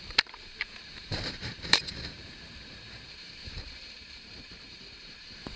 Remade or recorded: remade